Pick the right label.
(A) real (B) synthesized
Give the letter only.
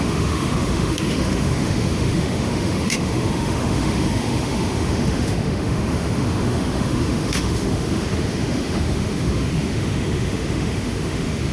B